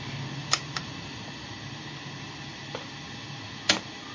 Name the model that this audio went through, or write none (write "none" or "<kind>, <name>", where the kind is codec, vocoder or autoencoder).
none